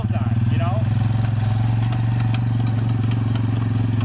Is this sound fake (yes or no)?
no